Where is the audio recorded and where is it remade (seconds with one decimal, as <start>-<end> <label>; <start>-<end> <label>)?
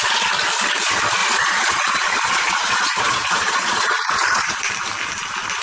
0.0-1.2 recorded; 1.2-4.6 remade; 4.6-5.6 recorded